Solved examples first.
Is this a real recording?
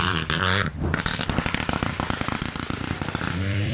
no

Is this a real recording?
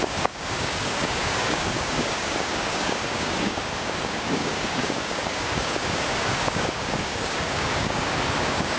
no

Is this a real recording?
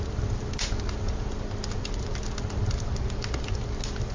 yes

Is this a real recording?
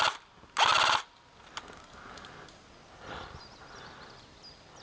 yes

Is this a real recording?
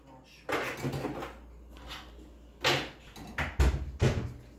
yes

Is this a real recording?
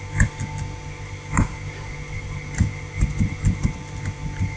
yes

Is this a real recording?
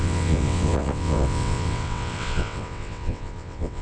no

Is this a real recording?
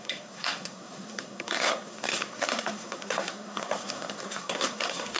no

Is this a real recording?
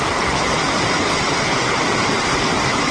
yes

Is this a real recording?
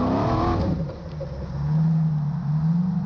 yes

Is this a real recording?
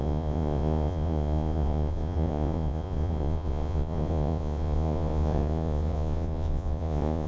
no